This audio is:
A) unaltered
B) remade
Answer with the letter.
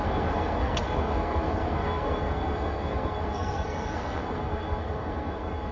B